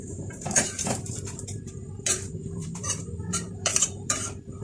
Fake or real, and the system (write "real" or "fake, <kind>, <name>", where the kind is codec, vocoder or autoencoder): fake, vocoder, BigVGAN v2